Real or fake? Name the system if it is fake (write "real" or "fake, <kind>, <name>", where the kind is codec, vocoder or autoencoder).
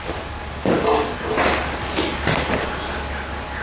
real